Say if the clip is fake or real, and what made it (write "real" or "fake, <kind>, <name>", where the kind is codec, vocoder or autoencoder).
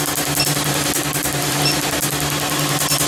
real